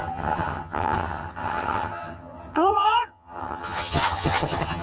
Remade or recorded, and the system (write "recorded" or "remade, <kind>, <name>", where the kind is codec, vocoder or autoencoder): remade, vocoder, HiFi-GAN